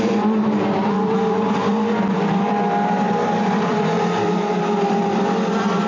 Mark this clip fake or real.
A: fake